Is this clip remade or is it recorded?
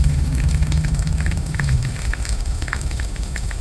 remade